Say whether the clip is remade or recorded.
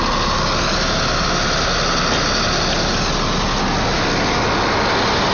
recorded